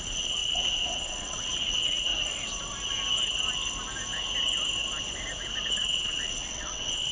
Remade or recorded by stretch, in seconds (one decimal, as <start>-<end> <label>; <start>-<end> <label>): 0.0-2.1 remade; 2.1-5.9 recorded; 5.9-7.1 remade